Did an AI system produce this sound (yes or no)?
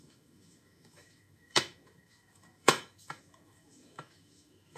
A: yes